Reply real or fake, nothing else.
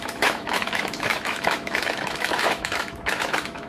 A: fake